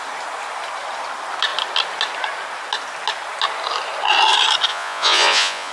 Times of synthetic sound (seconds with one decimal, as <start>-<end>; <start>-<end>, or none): 4.7-5.7